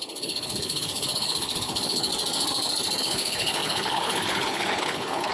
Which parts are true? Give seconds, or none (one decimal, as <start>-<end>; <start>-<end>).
2.1-3.0